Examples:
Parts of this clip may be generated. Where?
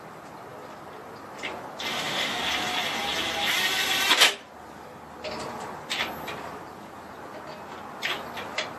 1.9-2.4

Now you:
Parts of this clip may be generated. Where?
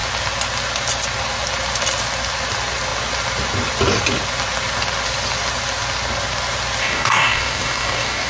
6.8-8.3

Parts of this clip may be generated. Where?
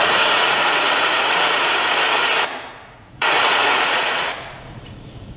0.0-1.6; 2.7-5.4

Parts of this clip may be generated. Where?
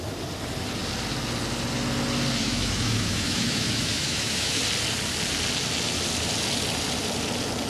2.4-4.6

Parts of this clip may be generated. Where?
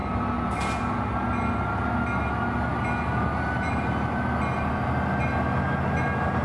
none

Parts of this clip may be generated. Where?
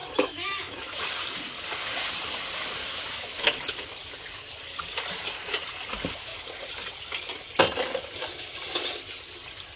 0.0-1.0; 2.8-3.9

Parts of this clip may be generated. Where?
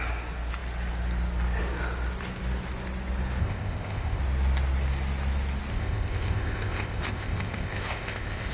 3.4-4.2; 5.7-8.5